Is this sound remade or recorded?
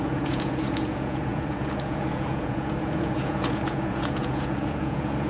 remade